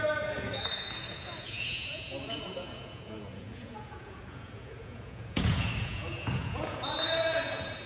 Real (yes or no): no